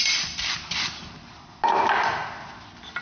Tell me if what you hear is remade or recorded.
recorded